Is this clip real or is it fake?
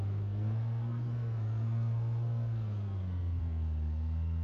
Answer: fake